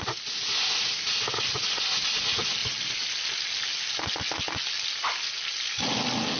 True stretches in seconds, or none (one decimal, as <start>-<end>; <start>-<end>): 0.0-6.4